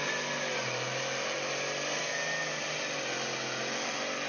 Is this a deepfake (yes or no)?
no